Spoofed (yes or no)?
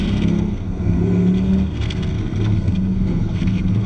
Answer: yes